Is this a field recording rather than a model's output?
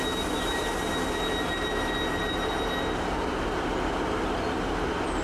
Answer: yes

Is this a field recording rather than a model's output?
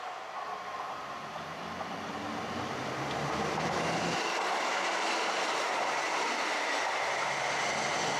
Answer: yes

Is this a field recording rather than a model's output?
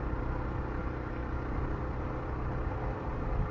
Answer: yes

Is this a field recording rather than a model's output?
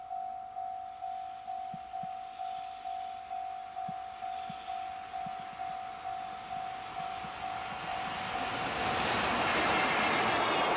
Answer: yes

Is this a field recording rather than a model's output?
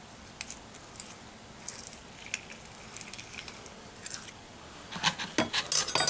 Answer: yes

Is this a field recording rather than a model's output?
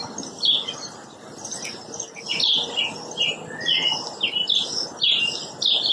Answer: yes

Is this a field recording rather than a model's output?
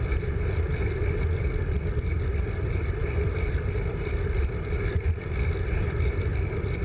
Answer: no